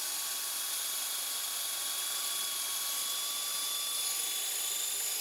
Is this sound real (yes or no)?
yes